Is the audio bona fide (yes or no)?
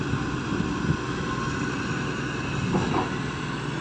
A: yes